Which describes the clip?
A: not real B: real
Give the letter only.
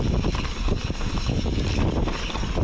A